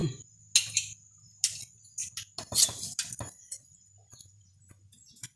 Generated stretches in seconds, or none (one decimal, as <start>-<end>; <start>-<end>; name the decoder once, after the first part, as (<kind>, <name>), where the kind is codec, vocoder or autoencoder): none